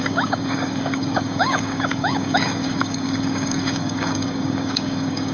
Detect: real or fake fake